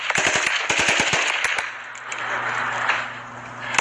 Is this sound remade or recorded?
recorded